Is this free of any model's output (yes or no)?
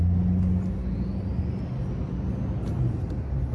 yes